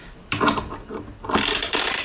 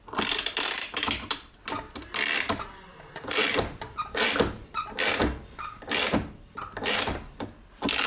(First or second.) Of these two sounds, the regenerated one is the second